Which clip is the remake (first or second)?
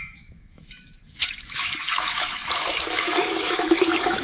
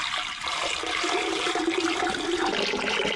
first